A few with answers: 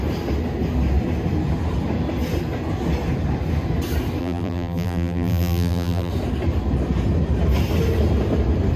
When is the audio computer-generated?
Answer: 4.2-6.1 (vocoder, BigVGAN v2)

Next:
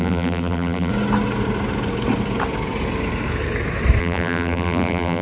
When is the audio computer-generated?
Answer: 0.0-0.9 (vocoder, BigVGAN v2); 4.0-5.2

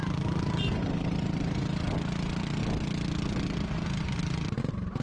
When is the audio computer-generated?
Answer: none

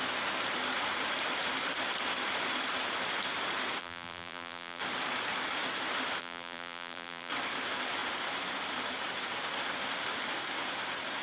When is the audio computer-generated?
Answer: 3.8-4.8 (vocoder, BigVGAN v2); 6.2-7.3

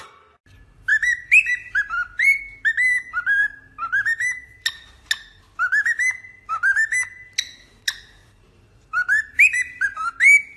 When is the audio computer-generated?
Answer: 0.9-2.4 (vocoder, BigVGAN v2); 8.2-10.1

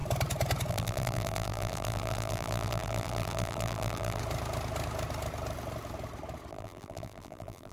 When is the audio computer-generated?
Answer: 0.7-4.2 (vocoder, BigVGAN v2); 6.5-7.7

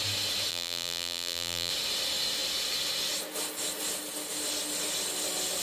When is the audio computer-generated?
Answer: 0.5-1.7 (vocoder, BigVGAN v2)